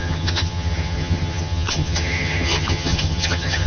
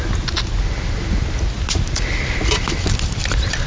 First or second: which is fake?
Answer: first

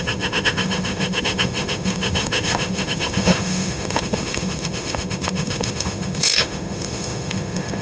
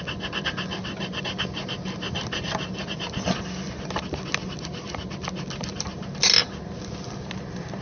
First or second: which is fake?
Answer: first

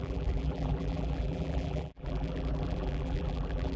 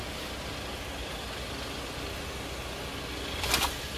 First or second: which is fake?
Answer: first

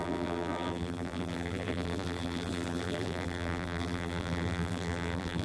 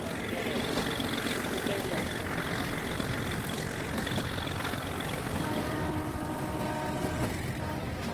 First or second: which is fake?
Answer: first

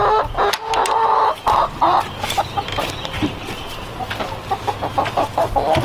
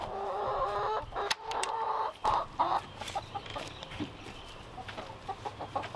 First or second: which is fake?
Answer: second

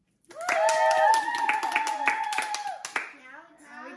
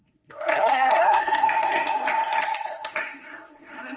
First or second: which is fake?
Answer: second